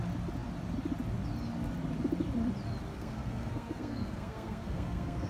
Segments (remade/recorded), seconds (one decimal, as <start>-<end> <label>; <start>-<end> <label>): 0.0-2.9 recorded; 2.9-5.3 remade